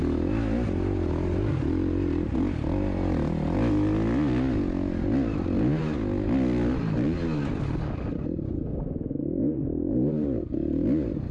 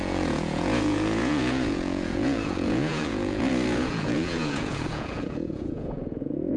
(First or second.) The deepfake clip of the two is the second